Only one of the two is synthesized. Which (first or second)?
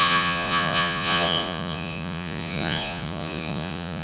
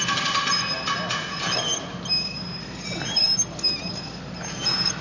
first